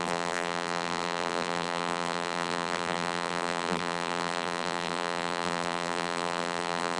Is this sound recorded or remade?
remade